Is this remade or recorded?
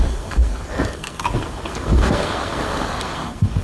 remade